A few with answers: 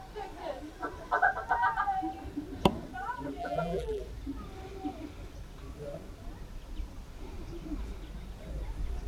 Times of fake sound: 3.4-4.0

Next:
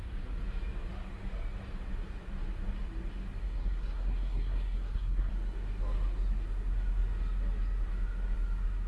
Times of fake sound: 3.4-5.3

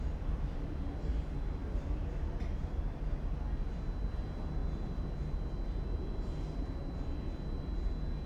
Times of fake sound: 1.6-2.3

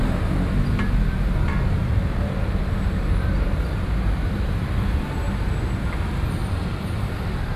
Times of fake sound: 1.8-5.1; 6.4-7.1

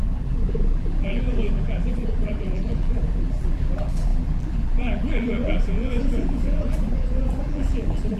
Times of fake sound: 0.0-8.2

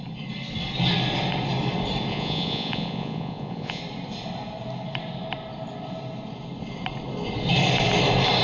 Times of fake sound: 2.1-3.8

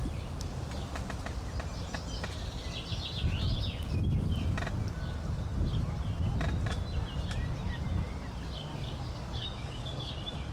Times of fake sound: 8.7-10.1